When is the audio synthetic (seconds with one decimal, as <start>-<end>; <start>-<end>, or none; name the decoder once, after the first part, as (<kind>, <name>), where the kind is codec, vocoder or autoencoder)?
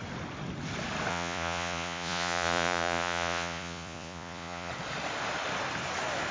1.1-4.7 (vocoder, Vocos)